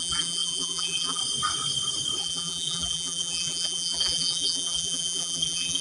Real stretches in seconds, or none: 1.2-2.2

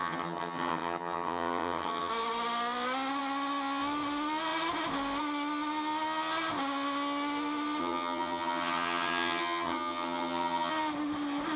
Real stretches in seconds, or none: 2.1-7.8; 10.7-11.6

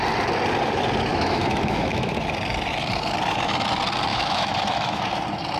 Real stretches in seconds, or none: 0.0-1.1; 2.1-4.1; 5.0-5.6